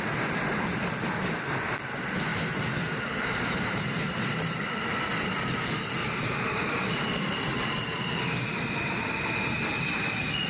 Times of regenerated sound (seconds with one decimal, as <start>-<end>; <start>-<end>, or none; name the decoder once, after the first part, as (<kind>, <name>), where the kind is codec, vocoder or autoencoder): 2.3-5.0 (vocoder, BigVGAN v2); 6.0-9.1